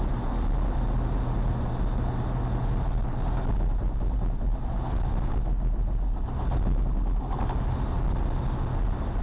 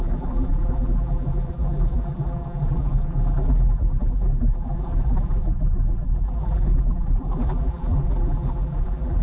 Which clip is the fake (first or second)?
second